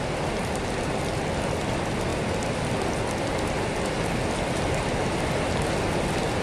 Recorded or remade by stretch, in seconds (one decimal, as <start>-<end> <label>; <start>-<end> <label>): 0.0-6.4 recorded